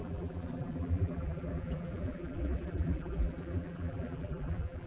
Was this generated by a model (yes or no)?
yes